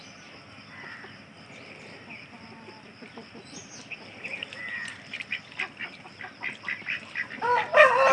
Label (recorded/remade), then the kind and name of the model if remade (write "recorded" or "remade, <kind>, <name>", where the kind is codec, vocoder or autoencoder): remade, vocoder, BigVGAN v2